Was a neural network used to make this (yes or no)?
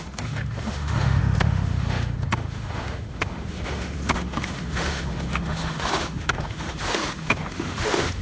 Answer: yes